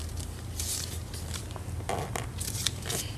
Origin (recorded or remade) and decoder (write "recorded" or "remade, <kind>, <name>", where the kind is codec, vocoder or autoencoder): recorded